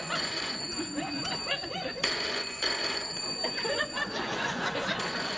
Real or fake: fake